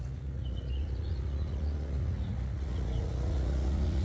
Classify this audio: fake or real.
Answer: fake